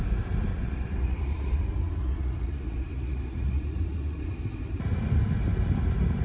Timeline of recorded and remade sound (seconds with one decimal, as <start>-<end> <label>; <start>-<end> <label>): 0.0-0.5 recorded; 0.5-4.2 remade; 4.2-6.2 recorded

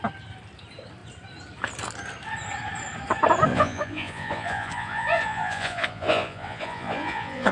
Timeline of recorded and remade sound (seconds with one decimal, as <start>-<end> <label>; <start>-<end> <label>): 0.0-3.5 recorded; 3.5-7.5 remade